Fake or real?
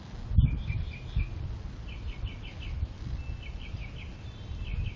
real